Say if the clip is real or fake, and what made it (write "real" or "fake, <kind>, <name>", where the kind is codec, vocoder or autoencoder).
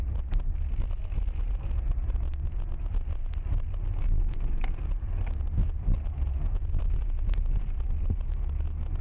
real